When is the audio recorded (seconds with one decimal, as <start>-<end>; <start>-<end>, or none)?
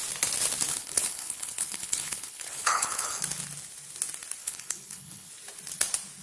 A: 0.0-0.7; 3.2-4.4; 5.3-6.2